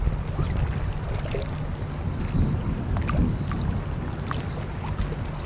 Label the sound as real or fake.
real